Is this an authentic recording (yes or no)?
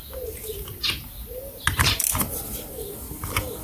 no